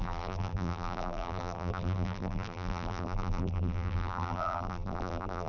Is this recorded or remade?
remade